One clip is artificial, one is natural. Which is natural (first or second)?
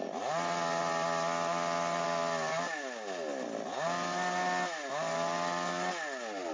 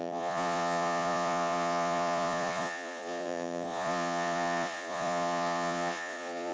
first